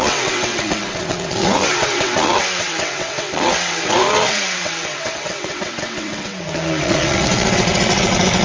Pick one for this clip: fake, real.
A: fake